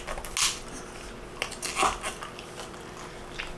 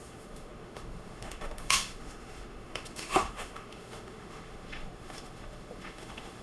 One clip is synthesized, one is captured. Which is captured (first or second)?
first